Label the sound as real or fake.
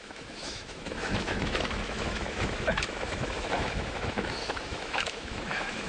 fake